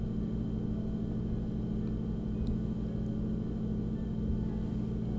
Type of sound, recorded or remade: recorded